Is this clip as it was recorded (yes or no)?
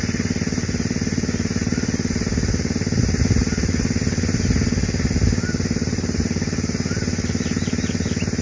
yes